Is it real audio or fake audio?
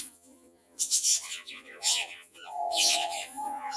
fake